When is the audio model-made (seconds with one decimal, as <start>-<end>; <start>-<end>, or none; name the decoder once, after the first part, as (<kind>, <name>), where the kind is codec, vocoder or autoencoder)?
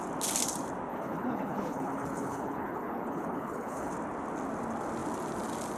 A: 0.9-3.9 (codec, HILCodec)